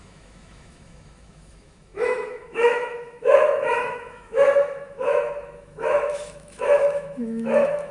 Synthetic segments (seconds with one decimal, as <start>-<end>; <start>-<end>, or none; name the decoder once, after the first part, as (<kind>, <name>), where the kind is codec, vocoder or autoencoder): 0.0-7.9 (autoencoder, DAC-VAE)